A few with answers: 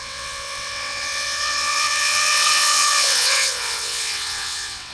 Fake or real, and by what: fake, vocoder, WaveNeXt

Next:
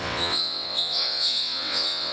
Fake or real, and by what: fake, vocoder, WaveNeXt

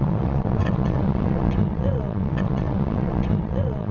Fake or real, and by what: fake, vocoder, WaveNeXt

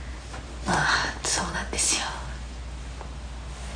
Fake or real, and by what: real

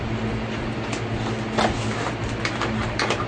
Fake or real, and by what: real